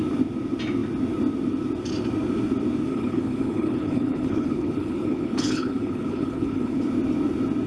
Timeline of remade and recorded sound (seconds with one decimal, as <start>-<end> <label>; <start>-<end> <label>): 0.0-2.9 recorded; 2.9-6.8 remade; 6.8-7.7 recorded